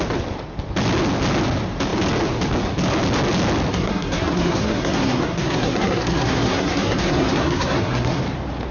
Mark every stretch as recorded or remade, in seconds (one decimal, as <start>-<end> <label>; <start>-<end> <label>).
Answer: 0.0-3.7 recorded; 3.7-8.2 remade; 8.2-8.7 recorded